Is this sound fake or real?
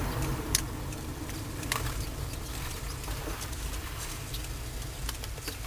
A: fake